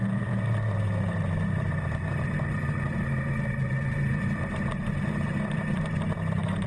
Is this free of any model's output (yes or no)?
no